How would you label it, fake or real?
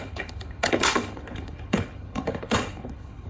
fake